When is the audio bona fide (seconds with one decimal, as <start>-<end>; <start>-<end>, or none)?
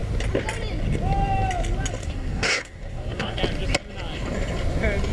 0.0-2.0; 3.4-5.1